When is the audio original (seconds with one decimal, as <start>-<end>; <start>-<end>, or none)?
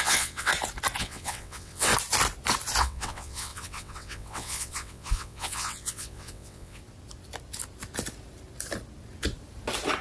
0.5-1.0; 1.9-2.8; 6.8-10.0